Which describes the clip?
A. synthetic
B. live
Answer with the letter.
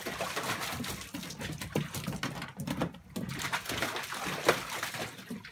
B